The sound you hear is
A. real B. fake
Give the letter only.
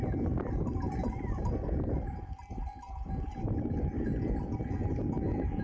A